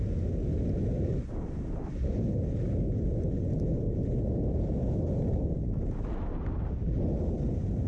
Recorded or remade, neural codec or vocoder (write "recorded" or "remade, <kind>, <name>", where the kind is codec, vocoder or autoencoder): recorded